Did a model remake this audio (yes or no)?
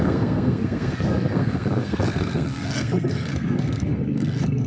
yes